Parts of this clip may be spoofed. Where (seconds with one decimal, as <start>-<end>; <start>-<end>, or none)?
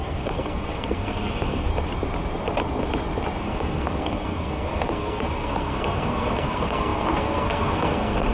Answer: 0.0-1.7; 3.4-8.3